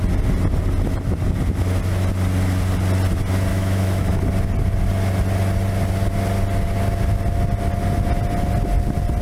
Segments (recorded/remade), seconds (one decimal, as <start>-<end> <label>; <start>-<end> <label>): 0.0-3.5 recorded; 3.5-4.2 remade; 4.2-9.2 recorded